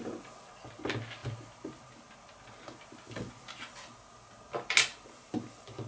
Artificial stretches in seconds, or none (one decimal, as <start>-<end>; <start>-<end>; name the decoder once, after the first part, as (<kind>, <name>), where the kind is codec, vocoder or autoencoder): none